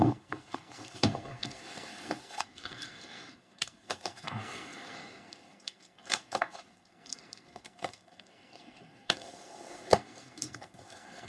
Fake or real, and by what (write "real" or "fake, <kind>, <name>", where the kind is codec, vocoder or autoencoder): fake, codec, SNAC